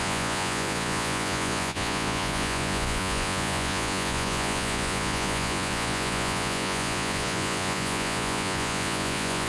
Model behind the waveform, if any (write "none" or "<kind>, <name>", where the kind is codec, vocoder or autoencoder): vocoder, Vocos